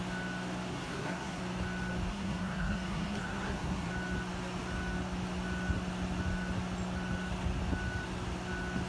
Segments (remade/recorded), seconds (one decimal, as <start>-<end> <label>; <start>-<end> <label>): 0.0-0.7 recorded; 0.7-1.4 remade; 1.4-2.1 recorded; 2.1-3.9 remade; 3.9-8.9 recorded